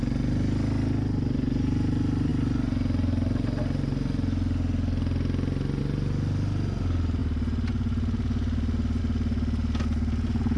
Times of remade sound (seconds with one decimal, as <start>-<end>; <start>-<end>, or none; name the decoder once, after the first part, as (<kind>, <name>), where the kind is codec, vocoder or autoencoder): none